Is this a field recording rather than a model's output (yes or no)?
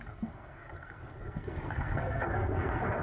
no